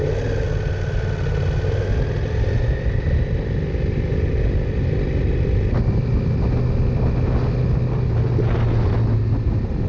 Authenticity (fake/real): real